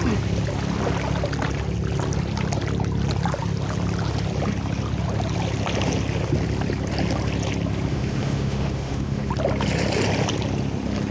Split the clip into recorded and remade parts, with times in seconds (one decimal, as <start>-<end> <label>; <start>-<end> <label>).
0.0-7.9 recorded; 7.9-9.3 remade; 9.3-11.1 recorded